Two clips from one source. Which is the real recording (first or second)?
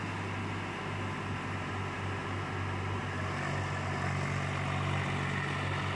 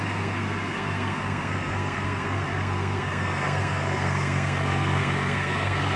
first